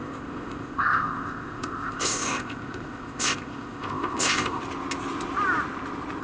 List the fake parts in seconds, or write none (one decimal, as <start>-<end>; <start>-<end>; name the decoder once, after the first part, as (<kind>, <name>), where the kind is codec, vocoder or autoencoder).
0.0-4.6 (codec, ZipCodec)